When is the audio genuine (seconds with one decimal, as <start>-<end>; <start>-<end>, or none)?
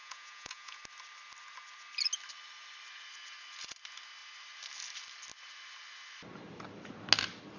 0.8-7.6